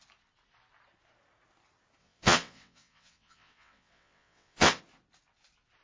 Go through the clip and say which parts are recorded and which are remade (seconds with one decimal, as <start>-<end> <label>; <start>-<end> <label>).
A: 0.0-2.0 recorded; 2.0-4.8 remade; 4.8-5.8 recorded